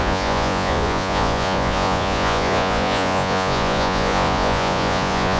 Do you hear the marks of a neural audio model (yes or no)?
yes